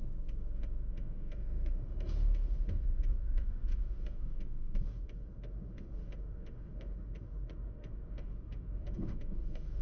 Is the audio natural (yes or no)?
no